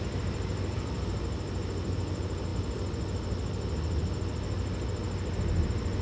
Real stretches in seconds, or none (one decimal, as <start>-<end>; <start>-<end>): 0.0-6.0